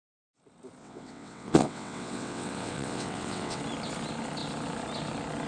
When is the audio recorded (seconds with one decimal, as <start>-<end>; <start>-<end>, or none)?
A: 0.0-0.8; 3.6-5.5